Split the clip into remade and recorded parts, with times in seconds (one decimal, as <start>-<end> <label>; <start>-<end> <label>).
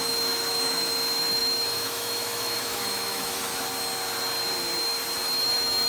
0.0-3.5 remade; 3.5-5.4 recorded; 5.4-5.9 remade